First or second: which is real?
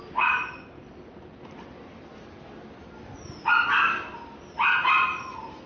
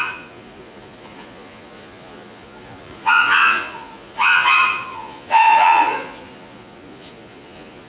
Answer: first